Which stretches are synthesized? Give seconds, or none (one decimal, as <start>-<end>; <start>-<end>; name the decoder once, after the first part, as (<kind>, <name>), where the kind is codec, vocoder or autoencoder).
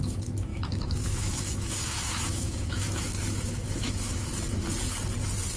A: 0.0-4.3 (autoencoder, DAC-VAE)